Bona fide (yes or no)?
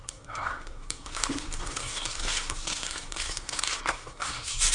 no